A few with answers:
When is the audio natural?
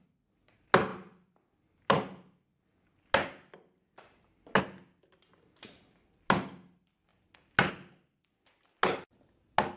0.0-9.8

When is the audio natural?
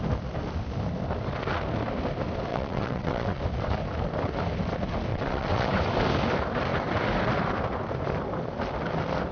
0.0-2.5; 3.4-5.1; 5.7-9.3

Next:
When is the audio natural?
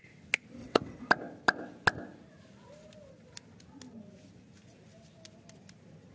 0.0-0.6; 1.1-6.1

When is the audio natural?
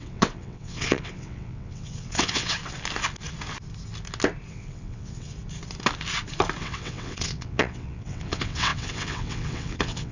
2.6-4.5; 5.3-6.6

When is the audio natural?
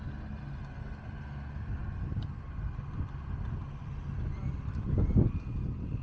0.0-6.0